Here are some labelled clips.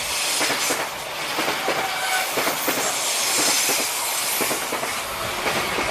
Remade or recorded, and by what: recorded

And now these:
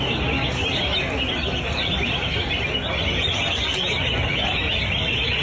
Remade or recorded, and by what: recorded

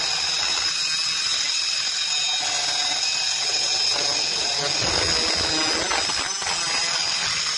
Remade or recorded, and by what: recorded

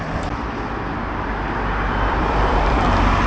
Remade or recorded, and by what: remade, vocoder, BigVGAN v2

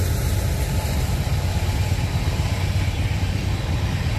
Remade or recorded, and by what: remade, vocoder, BigVGAN v2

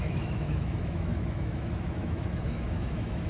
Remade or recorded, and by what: remade, autoencoder, DAC-VAE